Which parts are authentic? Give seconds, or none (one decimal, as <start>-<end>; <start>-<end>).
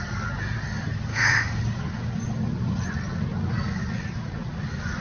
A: 0.0-1.1; 1.6-5.0